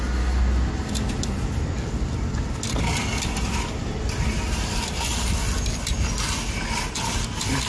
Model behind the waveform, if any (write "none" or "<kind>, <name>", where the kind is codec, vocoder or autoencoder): none